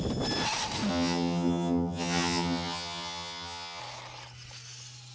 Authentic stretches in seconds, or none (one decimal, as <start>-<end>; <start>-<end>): 0.0-0.9; 3.8-5.1